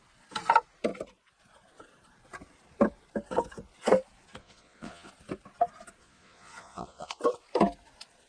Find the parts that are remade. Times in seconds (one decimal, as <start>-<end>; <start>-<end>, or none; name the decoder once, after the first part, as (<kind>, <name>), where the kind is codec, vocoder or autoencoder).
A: 4.4-5.1 (vocoder, Vocos); 6.0-7.2